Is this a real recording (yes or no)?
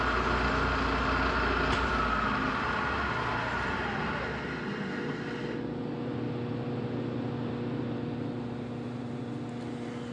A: yes